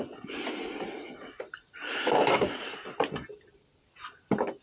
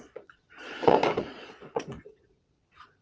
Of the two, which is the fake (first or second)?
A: second